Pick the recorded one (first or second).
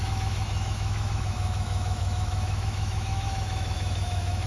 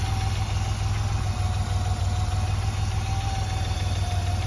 second